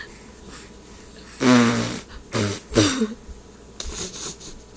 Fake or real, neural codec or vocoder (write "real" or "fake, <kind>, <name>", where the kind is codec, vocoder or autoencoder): real